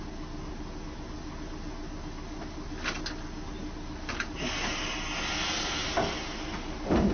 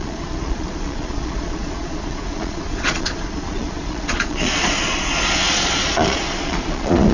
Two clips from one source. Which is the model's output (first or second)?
second